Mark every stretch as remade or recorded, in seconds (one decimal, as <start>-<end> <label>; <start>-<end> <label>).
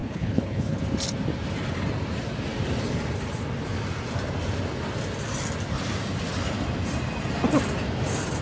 0.0-0.8 remade; 0.8-8.4 recorded